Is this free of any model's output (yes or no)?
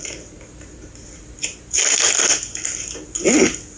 yes